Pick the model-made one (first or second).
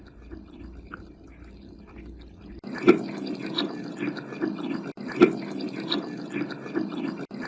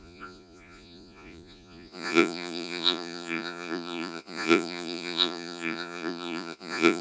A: second